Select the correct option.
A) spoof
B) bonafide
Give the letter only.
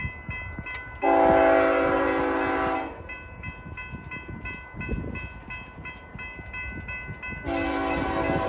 B